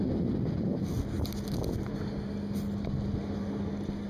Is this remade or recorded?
recorded